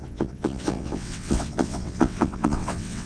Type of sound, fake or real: fake